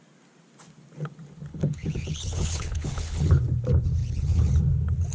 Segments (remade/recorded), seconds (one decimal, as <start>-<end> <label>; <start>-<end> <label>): 0.0-1.5 recorded; 1.5-3.4 remade; 3.4-4.0 recorded; 4.0-4.5 remade; 4.5-5.1 recorded